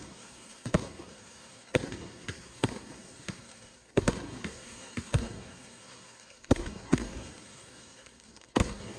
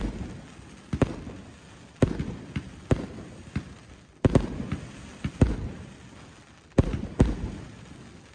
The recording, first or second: second